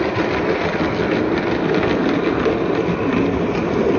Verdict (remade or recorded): recorded